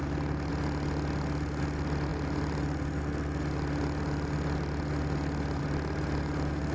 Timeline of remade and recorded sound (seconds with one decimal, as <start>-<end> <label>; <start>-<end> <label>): 0.0-6.7 recorded